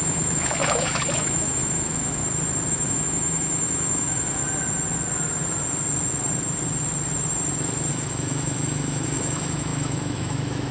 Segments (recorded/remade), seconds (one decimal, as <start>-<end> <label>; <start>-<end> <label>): 0.0-2.2 remade; 2.2-2.7 recorded; 2.7-4.4 remade; 4.4-7.9 recorded; 7.9-10.7 remade